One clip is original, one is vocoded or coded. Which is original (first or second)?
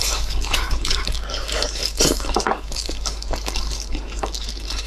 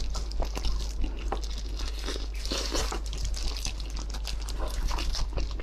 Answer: second